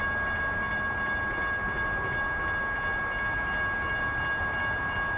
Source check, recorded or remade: recorded